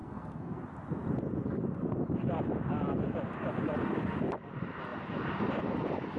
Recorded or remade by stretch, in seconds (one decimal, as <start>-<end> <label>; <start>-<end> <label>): 0.0-0.6 remade; 0.6-6.2 recorded